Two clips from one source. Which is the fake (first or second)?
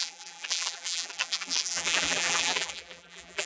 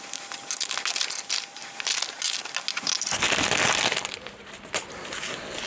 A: first